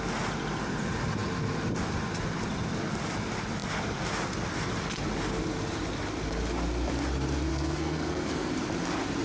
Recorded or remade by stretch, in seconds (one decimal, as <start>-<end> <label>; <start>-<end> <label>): 0.0-7.5 recorded; 7.5-8.5 remade; 8.5-9.2 recorded